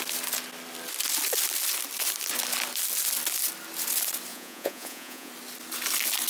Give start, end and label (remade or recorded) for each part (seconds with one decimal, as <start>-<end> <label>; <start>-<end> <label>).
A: 0.0-4.3 recorded; 4.3-5.3 remade; 5.3-6.3 recorded